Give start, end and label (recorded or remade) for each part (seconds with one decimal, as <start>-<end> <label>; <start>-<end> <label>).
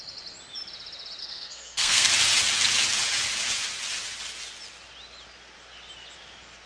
0.0-1.2 recorded; 1.2-2.1 remade; 2.1-6.7 recorded